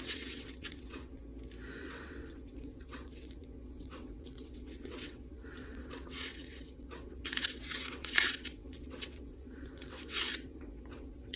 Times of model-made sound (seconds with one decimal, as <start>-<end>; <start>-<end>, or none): 0.0-1.2; 1.8-11.4